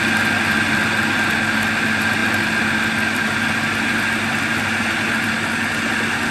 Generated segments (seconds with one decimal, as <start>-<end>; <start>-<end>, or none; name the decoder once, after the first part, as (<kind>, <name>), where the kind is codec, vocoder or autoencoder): none